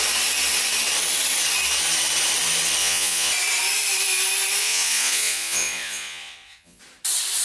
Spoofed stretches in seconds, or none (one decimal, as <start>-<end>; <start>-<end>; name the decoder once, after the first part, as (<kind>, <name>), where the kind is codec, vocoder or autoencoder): 2.8-3.3 (vocoder, Vocos); 4.6-6.8